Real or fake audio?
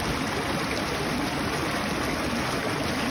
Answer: real